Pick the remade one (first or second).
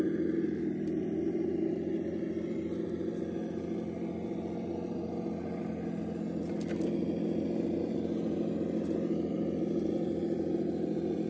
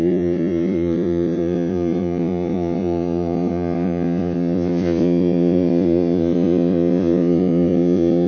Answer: second